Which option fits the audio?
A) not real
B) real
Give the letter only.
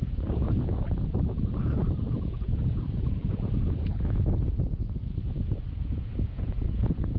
A